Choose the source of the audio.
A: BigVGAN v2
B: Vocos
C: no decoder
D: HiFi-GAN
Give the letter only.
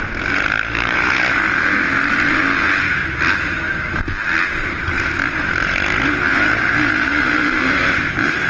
C